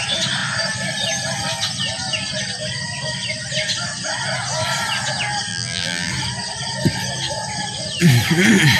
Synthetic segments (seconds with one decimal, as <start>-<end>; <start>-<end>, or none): 5.5-6.1